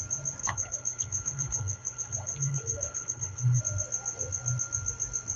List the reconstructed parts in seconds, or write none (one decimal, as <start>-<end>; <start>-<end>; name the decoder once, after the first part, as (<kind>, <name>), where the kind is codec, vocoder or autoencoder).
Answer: 0.4-3.6 (codec, HILCodec)